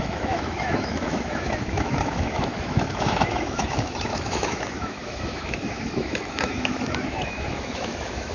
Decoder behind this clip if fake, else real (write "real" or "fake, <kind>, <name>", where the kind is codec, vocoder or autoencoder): fake, autoencoder, DAC-VAE